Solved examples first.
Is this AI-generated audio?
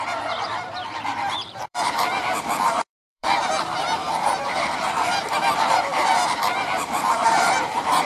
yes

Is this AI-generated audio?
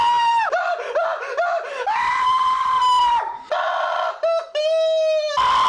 no